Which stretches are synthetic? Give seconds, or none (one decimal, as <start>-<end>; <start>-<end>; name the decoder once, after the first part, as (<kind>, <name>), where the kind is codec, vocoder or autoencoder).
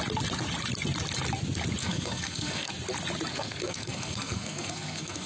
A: 1.8-2.7 (codec, SNAC); 3.3-5.3